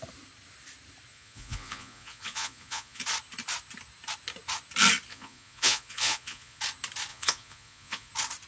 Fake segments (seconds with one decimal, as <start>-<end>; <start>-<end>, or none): 1.1-3.0; 5.1-6.6; 7.1-8.1